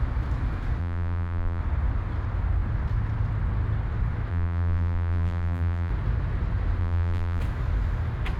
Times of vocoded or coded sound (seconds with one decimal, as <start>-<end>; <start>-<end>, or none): 0.8-1.6; 4.3-5.9; 6.8-7.4